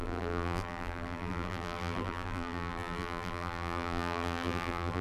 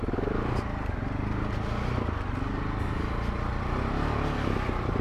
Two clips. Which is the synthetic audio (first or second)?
first